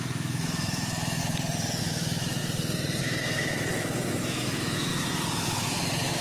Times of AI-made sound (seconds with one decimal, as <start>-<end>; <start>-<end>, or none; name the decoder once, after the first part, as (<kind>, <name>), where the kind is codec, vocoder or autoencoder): 0.0-1.2 (autoencoder, DAC-VAE); 1.8-2.4; 3.0-6.2